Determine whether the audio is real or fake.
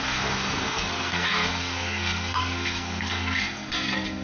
fake